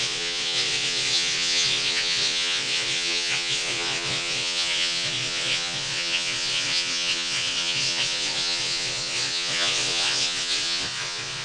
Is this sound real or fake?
fake